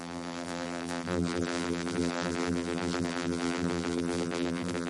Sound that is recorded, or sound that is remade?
remade